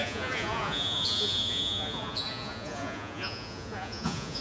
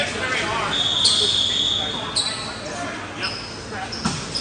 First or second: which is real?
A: second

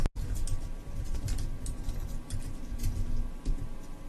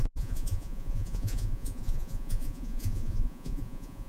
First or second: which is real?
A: first